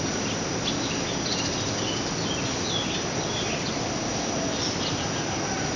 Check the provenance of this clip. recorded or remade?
recorded